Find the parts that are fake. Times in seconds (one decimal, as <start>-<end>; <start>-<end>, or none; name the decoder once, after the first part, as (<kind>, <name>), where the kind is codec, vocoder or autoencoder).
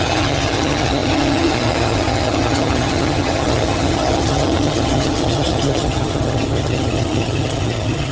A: 0.0-8.1 (vocoder, HiFi-GAN)